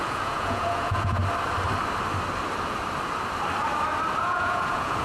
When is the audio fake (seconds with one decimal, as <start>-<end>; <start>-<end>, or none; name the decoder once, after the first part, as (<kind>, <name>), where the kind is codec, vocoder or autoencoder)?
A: 0.0-1.2 (vocoder, Vocos); 4.2-5.0